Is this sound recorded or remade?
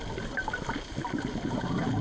recorded